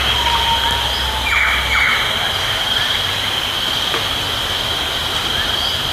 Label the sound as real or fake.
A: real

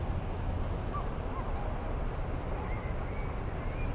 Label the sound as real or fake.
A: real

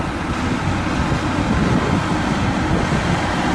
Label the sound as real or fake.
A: real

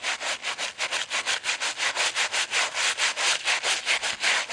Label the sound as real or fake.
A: real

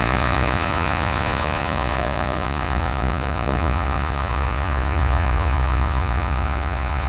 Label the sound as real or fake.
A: fake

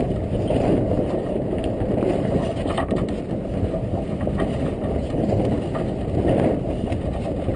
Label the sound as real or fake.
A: real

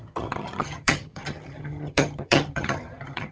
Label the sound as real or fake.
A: fake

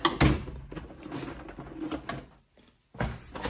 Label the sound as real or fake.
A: real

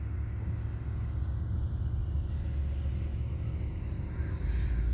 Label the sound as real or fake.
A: real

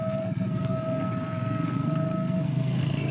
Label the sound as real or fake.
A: fake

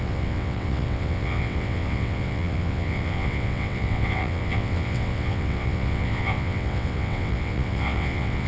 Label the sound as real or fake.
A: fake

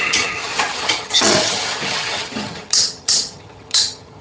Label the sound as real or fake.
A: fake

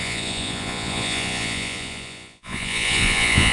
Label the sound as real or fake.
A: fake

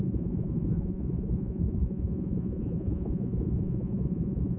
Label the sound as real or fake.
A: fake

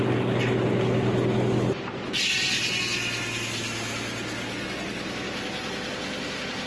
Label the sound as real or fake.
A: real